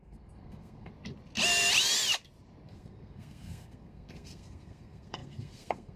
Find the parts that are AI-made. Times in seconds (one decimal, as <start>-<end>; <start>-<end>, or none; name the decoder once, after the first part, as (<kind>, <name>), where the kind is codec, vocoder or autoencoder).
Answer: 0.0-0.9 (codec, SNAC); 2.7-6.0